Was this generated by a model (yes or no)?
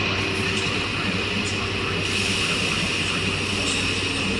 no